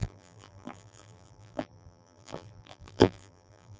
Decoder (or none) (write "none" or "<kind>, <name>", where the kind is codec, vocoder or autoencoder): vocoder, BigVGAN v2